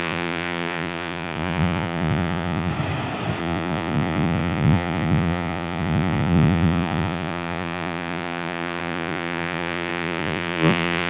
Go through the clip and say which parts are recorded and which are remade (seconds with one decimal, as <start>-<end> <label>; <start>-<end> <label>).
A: 0.0-2.7 remade; 2.7-3.4 recorded; 3.4-11.1 remade